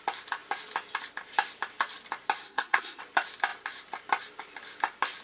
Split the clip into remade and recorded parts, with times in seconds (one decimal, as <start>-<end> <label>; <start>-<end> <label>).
0.0-2.4 recorded; 2.4-3.0 remade; 3.0-5.2 recorded